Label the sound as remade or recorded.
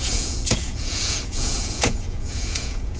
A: remade